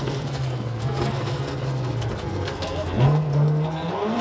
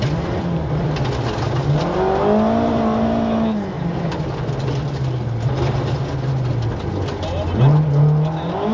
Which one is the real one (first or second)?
second